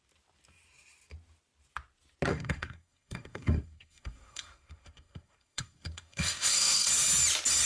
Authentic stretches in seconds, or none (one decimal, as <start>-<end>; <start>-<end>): 0.0-2.3; 6.9-7.7